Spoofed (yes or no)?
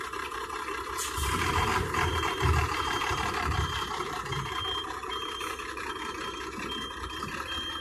yes